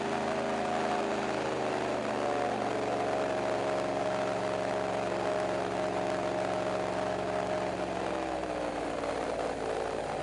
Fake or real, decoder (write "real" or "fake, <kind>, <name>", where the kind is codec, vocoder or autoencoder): real